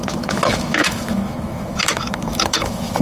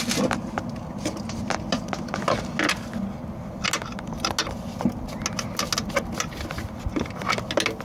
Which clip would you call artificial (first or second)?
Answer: first